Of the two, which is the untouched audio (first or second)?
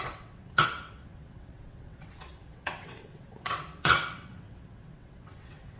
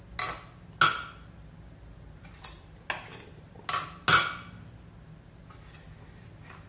second